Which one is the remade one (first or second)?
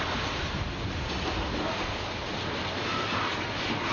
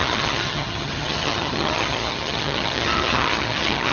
second